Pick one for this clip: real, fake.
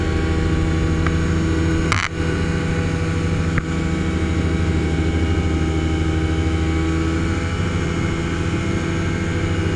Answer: real